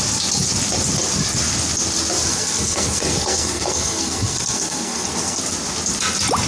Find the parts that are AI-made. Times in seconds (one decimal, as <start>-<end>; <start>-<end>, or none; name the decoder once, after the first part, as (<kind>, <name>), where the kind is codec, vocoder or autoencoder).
2.3-5.4 (codec, SNAC)